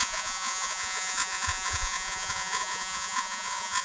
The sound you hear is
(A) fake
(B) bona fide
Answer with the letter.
A